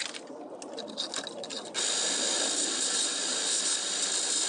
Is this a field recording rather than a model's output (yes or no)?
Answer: yes